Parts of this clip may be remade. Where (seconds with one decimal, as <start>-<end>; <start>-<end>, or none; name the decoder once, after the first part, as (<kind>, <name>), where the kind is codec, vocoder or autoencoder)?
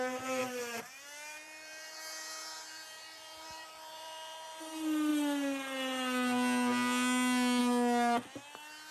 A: 0.4-4.6 (vocoder, BigVGAN v2)